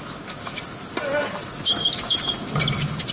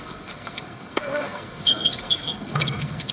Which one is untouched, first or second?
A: first